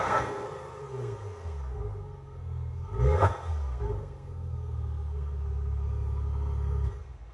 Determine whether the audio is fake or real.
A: fake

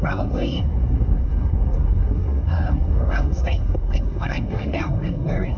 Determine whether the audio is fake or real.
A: fake